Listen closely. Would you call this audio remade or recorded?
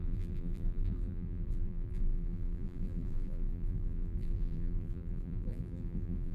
remade